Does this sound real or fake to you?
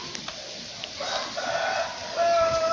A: real